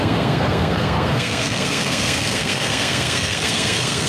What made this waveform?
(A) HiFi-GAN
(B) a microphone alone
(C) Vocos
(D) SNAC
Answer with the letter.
D